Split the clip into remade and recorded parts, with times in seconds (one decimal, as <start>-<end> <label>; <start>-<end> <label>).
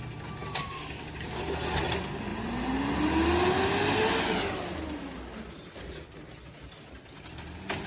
0.0-0.4 recorded; 0.4-1.4 remade; 1.4-7.9 recorded